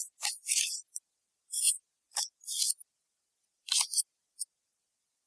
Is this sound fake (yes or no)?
no